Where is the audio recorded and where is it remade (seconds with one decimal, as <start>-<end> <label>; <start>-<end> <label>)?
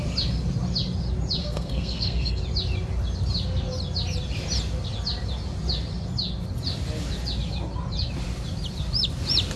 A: 0.0-1.4 recorded; 1.4-2.4 remade; 2.4-9.6 recorded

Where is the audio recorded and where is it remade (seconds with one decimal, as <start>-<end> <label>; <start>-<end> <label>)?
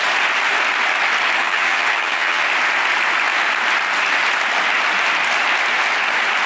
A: 0.0-1.4 recorded; 1.4-2.4 remade; 2.4-6.5 recorded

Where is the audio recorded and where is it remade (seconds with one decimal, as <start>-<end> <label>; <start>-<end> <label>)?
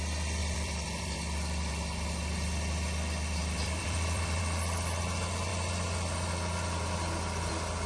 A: 0.0-0.4 recorded; 0.4-1.7 remade; 1.7-3.4 recorded; 3.4-4.4 remade; 4.4-7.9 recorded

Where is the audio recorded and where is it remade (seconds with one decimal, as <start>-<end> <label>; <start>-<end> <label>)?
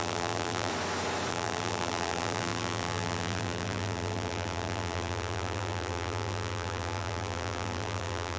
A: 0.0-0.7 remade; 0.7-1.3 recorded; 1.3-8.4 remade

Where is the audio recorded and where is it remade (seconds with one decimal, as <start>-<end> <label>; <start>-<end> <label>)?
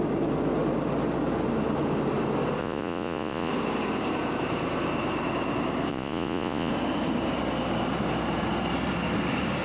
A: 0.0-2.6 recorded; 2.6-3.5 remade; 3.5-5.9 recorded; 5.9-6.7 remade; 6.7-9.6 recorded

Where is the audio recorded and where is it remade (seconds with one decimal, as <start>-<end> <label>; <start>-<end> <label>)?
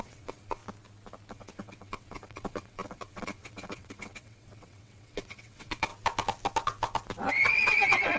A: 0.0-0.6 remade; 0.6-1.3 recorded; 1.3-5.9 remade; 5.9-7.3 recorded; 7.3-8.2 remade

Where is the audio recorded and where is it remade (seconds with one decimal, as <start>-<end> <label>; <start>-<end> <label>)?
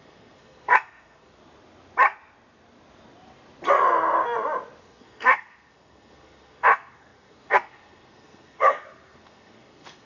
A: 0.0-1.4 remade; 1.4-4.8 recorded; 4.8-10.1 remade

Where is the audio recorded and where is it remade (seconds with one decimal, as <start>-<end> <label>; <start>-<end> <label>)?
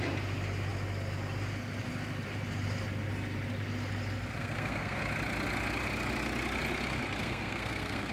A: 0.0-4.4 recorded; 4.4-5.0 remade; 5.0-7.2 recorded; 7.2-8.1 remade